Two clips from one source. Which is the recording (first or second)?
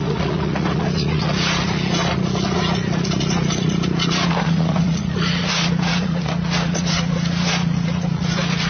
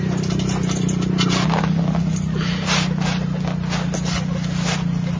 second